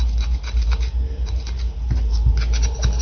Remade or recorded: recorded